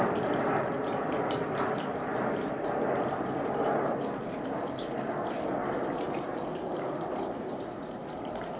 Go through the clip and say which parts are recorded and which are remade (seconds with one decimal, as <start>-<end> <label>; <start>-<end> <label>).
0.0-8.6 recorded